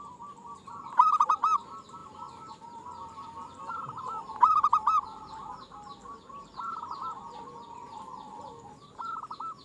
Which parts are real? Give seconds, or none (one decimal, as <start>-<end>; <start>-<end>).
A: 0.0-9.6